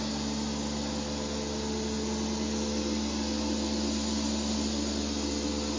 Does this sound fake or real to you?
real